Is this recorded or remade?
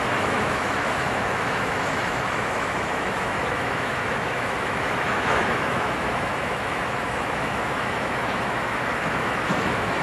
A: remade